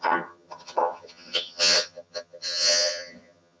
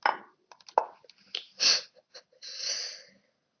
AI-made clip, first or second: first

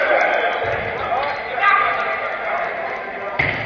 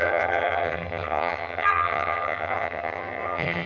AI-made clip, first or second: second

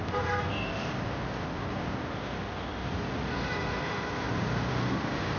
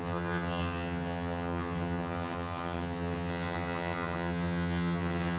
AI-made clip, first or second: second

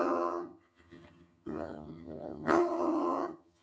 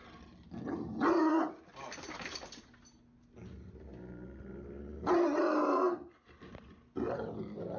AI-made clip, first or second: first